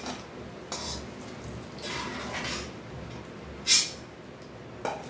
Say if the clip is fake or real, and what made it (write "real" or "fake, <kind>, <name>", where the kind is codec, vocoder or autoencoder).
real